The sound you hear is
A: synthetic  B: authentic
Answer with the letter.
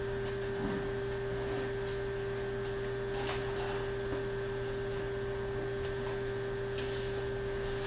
B